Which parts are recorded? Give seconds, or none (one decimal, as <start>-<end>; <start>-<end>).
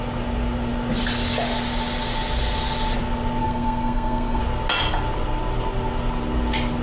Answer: 0.0-3.4; 4.4-6.8